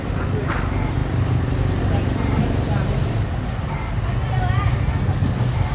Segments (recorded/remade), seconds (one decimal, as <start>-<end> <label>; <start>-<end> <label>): 0.0-5.7 recorded